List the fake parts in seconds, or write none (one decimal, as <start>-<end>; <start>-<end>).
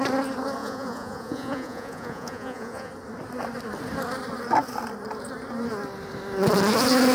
0.6-2.9